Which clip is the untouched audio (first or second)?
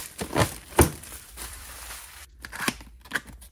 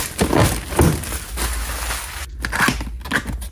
second